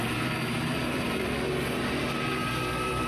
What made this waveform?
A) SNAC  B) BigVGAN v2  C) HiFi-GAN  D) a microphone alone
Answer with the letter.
B